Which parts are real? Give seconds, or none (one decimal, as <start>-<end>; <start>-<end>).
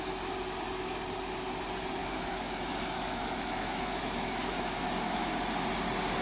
0.0-2.0; 5.3-6.2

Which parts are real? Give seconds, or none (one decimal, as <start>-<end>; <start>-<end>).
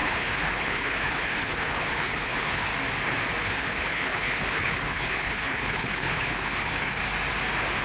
2.7-3.4; 7.0-7.8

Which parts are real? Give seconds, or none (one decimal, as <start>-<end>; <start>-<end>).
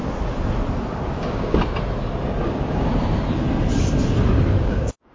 0.0-0.9; 1.6-2.4; 2.9-4.6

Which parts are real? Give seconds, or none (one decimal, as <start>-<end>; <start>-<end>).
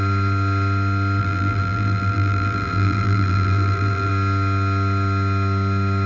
0.0-1.2; 4.1-6.1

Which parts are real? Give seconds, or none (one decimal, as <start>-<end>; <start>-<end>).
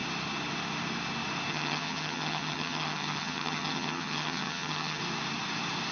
0.0-1.5; 5.0-5.9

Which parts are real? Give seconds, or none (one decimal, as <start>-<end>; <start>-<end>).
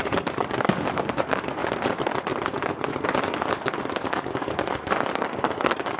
1.6-3.2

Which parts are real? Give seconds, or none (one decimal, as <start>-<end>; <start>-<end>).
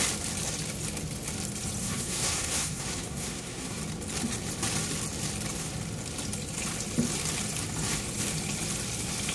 0.0-1.8; 3.8-9.3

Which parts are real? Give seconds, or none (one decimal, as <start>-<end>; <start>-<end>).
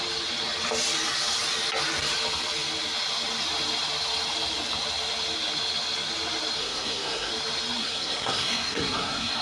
0.0-6.6; 7.3-7.8